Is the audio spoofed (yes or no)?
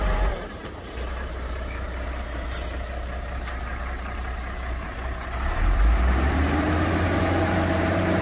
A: yes